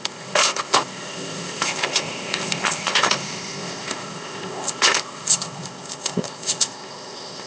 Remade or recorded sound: remade